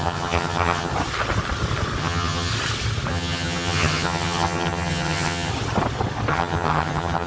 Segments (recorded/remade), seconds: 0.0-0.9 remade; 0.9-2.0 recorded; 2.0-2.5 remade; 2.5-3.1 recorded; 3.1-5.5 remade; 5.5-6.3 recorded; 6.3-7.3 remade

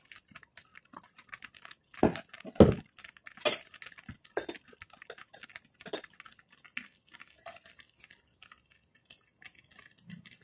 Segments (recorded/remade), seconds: 0.0-10.4 recorded

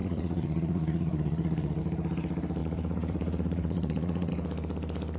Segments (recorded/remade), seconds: 0.0-1.8 remade; 1.8-2.6 recorded; 2.6-4.3 remade; 4.3-5.2 recorded

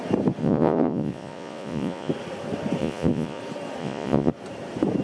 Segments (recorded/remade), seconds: 0.0-0.4 recorded; 0.4-2.1 remade; 2.1-2.8 recorded; 2.8-3.4 remade; 3.4-3.8 recorded; 3.8-4.3 remade; 4.3-5.0 recorded

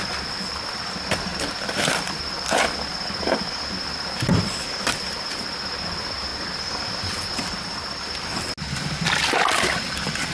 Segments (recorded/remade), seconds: 0.0-10.3 recorded

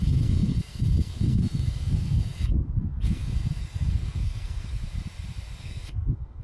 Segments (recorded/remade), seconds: 0.0-4.8 remade; 4.8-5.6 recorded; 5.6-6.4 remade